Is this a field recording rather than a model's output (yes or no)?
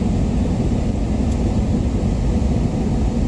yes